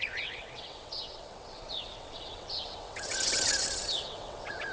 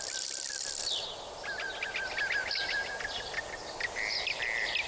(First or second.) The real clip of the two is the second